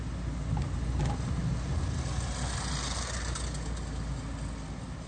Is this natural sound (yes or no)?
yes